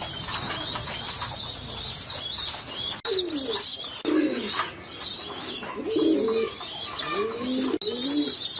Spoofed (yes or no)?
no